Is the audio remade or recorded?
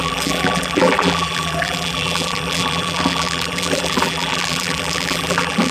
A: remade